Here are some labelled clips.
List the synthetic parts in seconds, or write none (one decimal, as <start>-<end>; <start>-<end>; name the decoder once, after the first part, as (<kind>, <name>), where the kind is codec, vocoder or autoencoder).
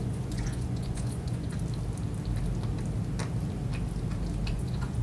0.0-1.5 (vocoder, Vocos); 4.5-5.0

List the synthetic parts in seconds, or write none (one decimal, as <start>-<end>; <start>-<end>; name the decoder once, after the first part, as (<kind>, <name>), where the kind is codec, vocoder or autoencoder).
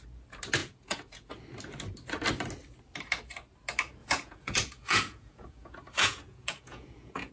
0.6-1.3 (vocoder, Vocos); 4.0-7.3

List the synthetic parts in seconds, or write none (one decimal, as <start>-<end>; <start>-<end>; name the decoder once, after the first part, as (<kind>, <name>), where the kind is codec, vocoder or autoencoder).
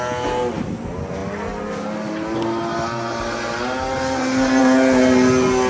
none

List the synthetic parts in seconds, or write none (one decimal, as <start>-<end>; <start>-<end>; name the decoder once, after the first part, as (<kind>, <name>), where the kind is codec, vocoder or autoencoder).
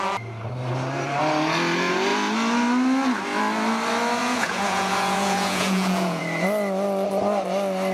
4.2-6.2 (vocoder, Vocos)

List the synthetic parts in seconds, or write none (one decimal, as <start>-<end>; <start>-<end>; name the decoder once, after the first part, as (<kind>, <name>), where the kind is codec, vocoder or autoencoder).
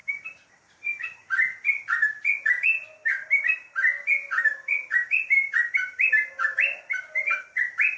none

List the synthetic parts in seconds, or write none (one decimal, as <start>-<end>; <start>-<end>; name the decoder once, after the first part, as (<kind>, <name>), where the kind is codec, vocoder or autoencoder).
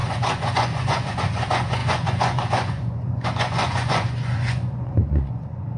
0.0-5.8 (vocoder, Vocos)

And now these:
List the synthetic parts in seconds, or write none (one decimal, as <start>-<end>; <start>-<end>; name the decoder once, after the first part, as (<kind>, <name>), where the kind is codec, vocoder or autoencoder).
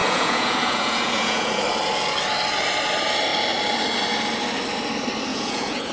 0.0-1.6 (vocoder, Vocos); 5.3-5.9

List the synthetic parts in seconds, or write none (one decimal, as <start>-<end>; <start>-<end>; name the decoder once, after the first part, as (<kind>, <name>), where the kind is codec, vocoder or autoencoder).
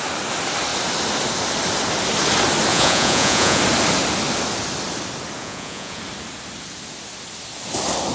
2.7-3.6 (vocoder, Vocos); 5.4-6.0